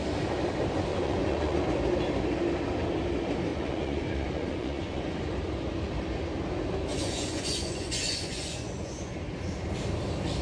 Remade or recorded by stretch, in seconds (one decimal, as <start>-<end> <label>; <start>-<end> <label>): 0.0-0.9 recorded; 0.9-1.6 remade; 1.6-3.5 recorded; 3.5-5.0 remade; 5.0-6.9 recorded; 6.9-9.1 remade; 9.1-10.4 recorded